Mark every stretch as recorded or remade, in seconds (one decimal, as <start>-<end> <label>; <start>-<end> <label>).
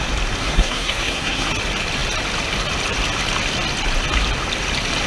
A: 0.0-0.4 recorded; 0.4-1.5 remade; 1.5-5.1 recorded